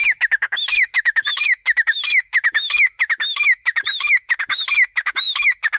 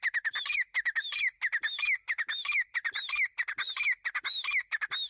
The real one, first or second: second